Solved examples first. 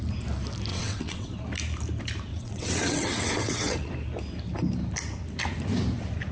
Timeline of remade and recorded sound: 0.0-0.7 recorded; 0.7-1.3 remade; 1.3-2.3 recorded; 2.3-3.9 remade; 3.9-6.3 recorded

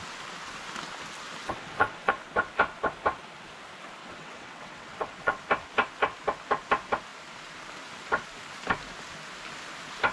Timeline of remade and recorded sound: 0.0-1.4 recorded; 1.4-2.1 remade; 2.1-4.0 recorded; 4.0-5.4 remade; 5.4-10.1 recorded

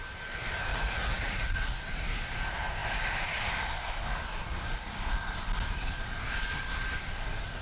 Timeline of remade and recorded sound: 0.0-0.7 recorded; 0.7-1.8 remade; 1.8-7.6 recorded

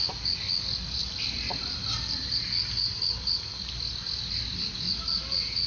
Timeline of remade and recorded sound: 0.0-5.7 recorded